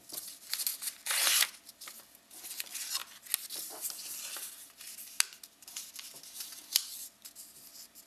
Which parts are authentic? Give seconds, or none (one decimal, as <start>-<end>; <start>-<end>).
0.0-8.1